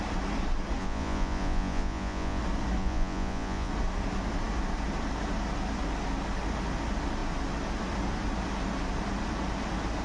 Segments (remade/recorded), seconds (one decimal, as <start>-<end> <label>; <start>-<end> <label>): 0.0-0.8 recorded; 0.8-2.4 remade; 2.4-2.8 recorded; 2.8-3.7 remade; 3.7-10.0 recorded